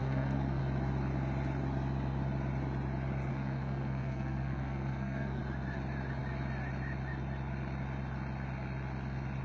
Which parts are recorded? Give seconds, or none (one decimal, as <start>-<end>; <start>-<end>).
0.6-3.3; 5.4-9.4